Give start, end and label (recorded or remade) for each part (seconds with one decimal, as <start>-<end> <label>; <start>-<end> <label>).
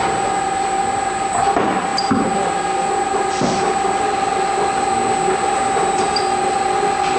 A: 0.0-7.2 recorded